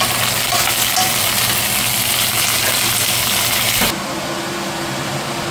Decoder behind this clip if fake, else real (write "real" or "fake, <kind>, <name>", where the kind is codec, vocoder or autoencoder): real